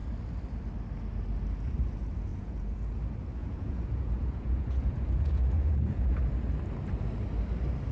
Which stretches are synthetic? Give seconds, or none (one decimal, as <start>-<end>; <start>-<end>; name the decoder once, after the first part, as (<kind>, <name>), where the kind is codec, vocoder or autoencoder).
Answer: 2.3-2.9 (vocoder, Vocos); 3.4-6.2